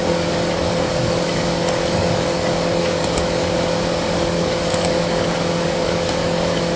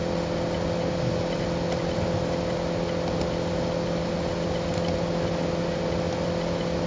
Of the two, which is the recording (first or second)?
second